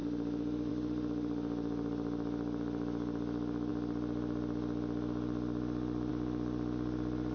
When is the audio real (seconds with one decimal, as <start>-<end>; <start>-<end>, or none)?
0.0-7.3